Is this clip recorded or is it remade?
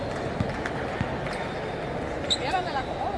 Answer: recorded